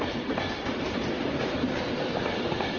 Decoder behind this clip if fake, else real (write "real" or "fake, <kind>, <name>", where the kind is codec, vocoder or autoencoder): real